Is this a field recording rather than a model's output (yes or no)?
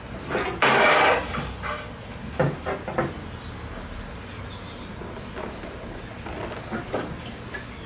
yes